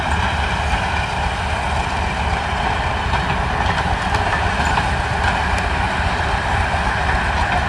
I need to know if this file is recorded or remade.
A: recorded